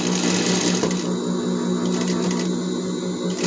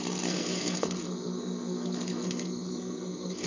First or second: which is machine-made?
second